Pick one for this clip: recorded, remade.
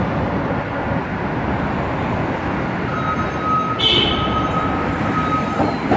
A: recorded